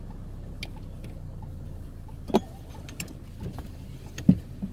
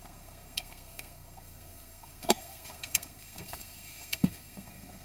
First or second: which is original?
first